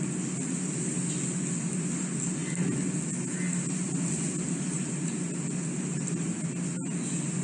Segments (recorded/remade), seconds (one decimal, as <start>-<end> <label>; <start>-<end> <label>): 0.0-7.4 recorded